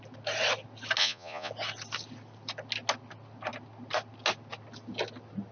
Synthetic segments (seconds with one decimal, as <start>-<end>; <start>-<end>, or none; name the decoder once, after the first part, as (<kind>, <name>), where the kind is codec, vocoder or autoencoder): 1.0-1.5 (vocoder, Vocos)